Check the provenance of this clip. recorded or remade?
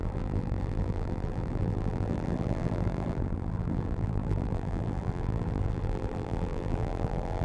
remade